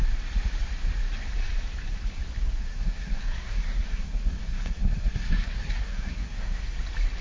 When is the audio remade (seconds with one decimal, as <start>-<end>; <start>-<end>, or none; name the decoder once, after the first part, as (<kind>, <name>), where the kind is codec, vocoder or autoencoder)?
2.6-6.6 (codec, SNAC)